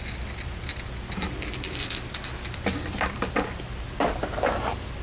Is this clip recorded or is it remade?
recorded